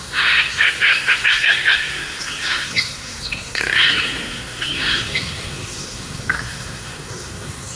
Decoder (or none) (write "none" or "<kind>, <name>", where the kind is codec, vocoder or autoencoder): codec, SNAC